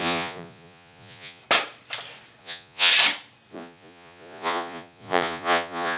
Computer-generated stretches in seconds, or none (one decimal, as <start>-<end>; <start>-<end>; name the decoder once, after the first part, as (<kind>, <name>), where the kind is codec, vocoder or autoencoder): 0.0-1.4 (vocoder, Vocos); 2.4-2.9; 3.5-6.0